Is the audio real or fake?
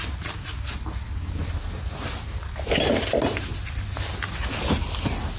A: real